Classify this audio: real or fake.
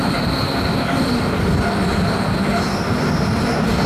real